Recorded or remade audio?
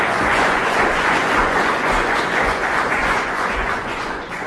remade